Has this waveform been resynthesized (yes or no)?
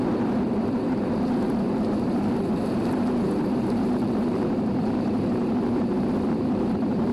yes